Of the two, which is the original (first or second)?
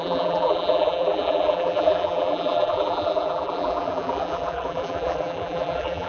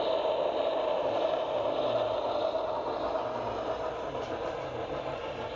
second